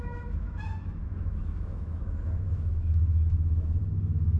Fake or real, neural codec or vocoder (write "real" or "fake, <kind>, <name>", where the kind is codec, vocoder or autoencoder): fake, autoencoder, DAC-VAE